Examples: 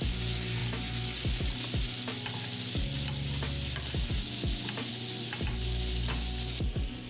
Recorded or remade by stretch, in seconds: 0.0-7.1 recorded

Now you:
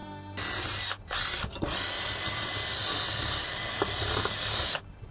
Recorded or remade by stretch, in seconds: 0.0-5.1 recorded